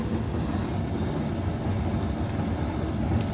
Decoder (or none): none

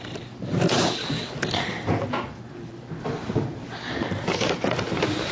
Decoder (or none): none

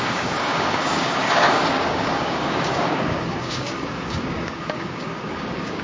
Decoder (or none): codec, DAC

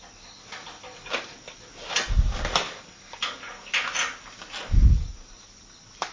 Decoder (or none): none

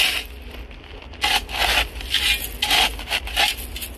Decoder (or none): none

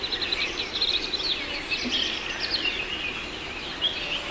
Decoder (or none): none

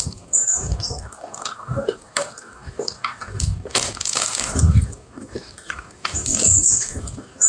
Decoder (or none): codec, DAC